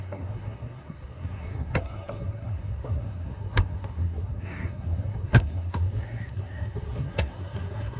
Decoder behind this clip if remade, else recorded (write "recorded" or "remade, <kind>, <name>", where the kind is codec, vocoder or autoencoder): remade, codec, SNAC